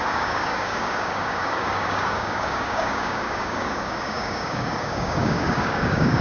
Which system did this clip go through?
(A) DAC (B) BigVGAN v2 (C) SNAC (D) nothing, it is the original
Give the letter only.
A